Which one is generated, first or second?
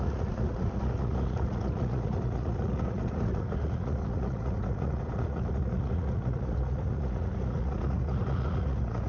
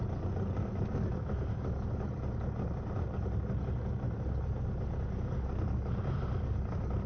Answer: first